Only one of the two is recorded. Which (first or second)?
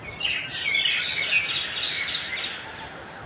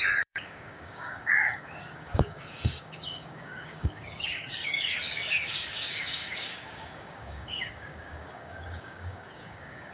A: first